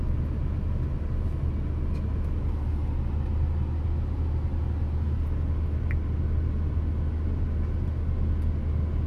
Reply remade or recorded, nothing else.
recorded